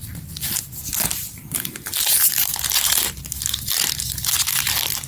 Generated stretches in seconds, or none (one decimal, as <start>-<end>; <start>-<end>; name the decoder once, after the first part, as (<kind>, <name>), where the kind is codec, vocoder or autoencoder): 1.9-3.2 (vocoder, BigVGAN v2)